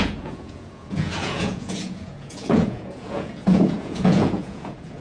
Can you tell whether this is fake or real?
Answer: fake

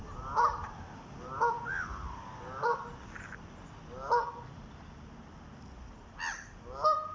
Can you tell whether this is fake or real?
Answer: real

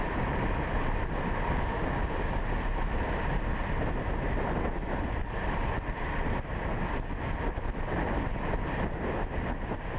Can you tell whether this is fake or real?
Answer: real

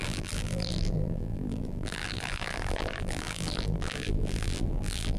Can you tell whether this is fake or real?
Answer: fake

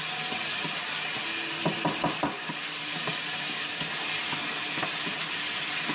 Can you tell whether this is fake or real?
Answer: real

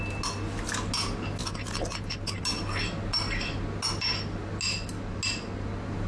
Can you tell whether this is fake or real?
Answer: real